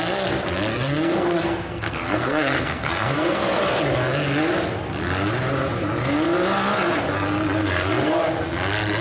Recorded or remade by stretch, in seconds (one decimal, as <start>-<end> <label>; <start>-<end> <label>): 0.0-0.7 recorded; 0.7-3.6 remade; 3.6-7.6 recorded; 7.6-8.1 remade; 8.1-9.0 recorded